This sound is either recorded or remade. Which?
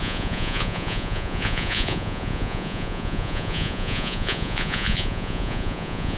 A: remade